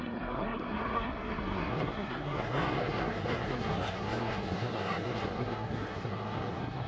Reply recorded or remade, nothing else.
remade